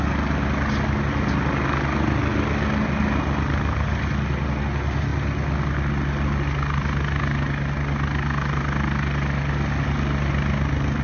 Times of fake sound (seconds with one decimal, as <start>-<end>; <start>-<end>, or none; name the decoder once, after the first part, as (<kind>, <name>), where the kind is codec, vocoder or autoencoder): none

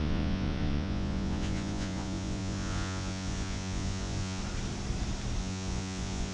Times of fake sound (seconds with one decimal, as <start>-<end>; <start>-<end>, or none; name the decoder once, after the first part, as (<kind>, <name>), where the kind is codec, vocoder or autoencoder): 0.0-4.4 (vocoder, Vocos); 5.4-6.3